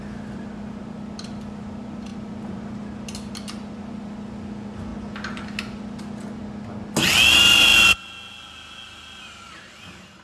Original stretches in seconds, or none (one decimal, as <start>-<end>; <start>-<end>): 0.0-10.2